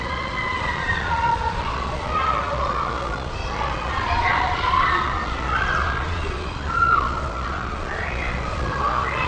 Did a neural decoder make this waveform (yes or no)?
yes